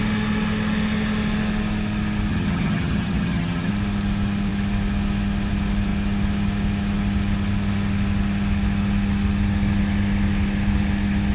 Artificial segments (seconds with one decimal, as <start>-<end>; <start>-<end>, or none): 2.3-3.7